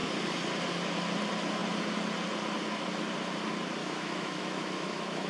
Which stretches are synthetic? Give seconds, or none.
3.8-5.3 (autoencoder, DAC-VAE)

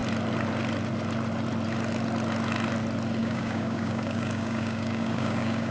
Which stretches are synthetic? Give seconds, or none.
3.2-5.7 (codec, DAC)

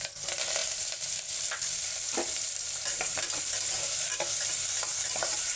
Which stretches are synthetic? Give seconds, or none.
0.0-5.6 (vocoder, BigVGAN v2)